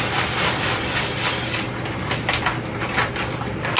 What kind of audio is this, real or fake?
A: real